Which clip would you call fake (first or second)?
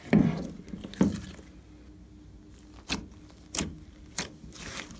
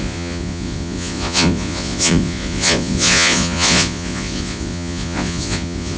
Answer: second